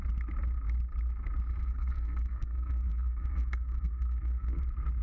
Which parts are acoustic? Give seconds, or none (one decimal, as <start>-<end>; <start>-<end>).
0.0-1.6; 4.6-5.0